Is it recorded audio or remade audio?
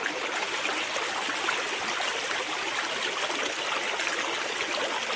recorded